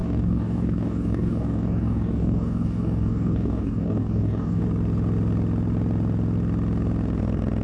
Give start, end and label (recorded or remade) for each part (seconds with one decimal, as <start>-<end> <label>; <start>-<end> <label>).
0.0-4.6 remade; 4.6-7.6 recorded